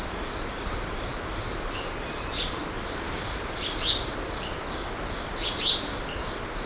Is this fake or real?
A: real